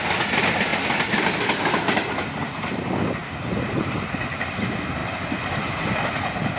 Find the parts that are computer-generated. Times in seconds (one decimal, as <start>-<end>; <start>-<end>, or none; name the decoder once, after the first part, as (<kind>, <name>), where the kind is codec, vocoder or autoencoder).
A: 0.0-0.7 (vocoder, BigVGAN v2); 1.6-3.2; 3.7-5.0; 5.5-6.6